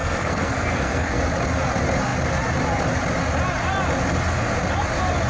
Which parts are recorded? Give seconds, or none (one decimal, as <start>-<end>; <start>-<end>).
1.2-5.3